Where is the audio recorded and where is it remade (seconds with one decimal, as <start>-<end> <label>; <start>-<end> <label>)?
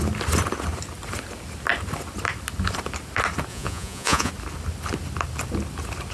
0.0-3.5 recorded; 3.5-4.3 remade; 4.3-6.1 recorded